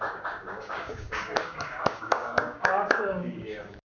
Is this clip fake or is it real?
fake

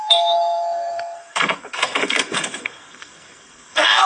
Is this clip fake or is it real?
fake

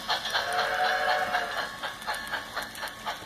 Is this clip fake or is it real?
real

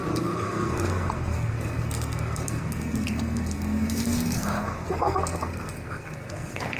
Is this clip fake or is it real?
fake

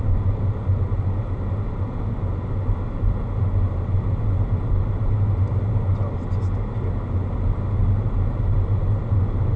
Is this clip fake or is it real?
real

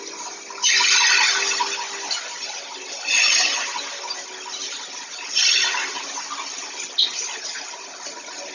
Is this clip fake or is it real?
real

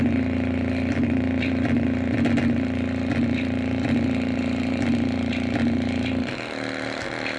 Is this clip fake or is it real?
real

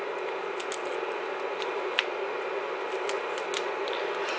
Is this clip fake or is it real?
real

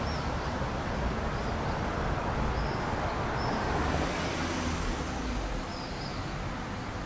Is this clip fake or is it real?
real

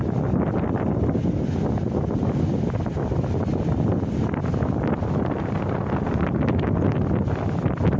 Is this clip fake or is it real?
real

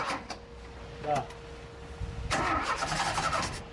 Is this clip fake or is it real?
real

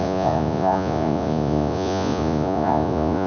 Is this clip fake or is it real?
fake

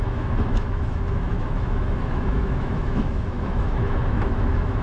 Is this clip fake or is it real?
fake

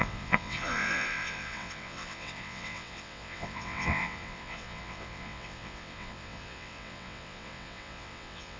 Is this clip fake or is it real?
fake